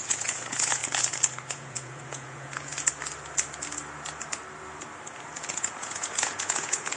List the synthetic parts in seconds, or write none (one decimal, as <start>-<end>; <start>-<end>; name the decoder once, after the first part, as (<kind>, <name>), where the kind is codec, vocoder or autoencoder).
0.0-0.8 (vocoder, Vocos); 1.5-2.7; 5.5-7.0